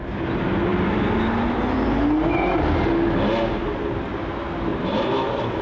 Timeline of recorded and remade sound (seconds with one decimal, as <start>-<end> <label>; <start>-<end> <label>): 0.0-4.7 recorded; 4.7-5.6 remade